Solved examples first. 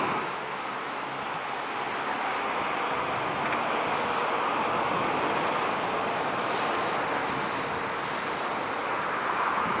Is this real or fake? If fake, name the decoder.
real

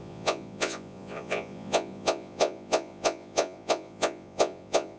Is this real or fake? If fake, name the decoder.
fake, vocoder, Vocos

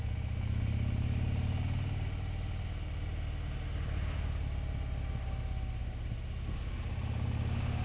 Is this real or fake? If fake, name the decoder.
real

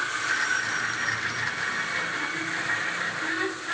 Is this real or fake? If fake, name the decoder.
real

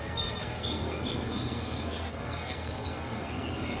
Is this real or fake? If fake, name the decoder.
fake, codec, SNAC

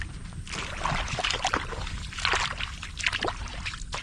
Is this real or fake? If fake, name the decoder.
real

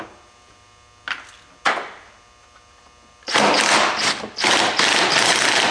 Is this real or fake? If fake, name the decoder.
real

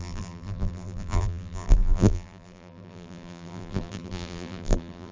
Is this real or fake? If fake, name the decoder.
fake, vocoder, BigVGAN v2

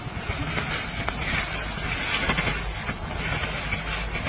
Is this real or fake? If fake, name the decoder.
real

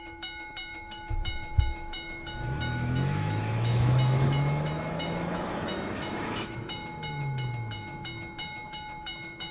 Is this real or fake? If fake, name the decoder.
fake, autoencoder, DAC-VAE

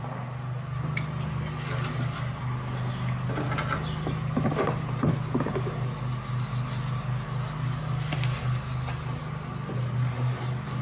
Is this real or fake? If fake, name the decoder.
real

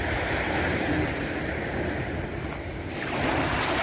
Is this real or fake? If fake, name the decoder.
real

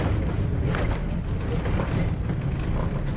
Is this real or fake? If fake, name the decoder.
real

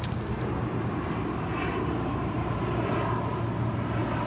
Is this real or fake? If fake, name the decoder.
real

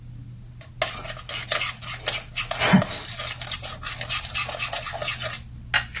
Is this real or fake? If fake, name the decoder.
real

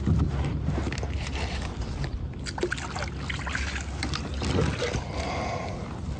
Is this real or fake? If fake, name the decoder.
real